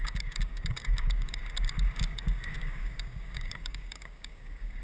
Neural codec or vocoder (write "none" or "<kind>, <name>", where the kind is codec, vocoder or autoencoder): codec, DAC